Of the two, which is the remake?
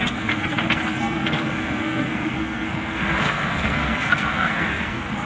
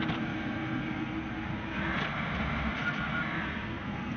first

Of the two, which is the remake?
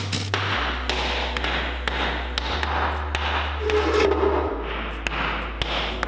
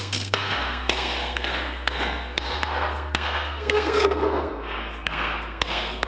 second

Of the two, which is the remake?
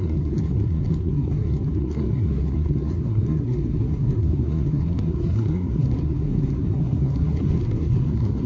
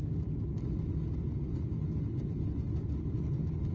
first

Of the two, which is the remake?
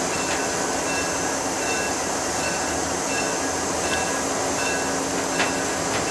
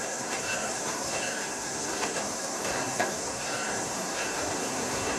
second